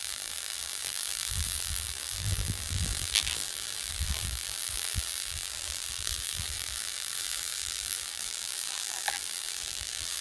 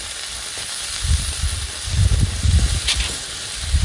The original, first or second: second